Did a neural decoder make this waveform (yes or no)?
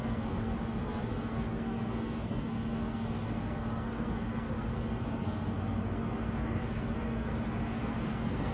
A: yes